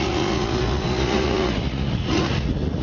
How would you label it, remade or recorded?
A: remade